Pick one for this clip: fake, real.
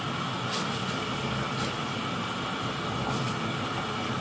real